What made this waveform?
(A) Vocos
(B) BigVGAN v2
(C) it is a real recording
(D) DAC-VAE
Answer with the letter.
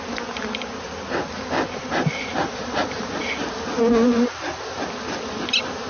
C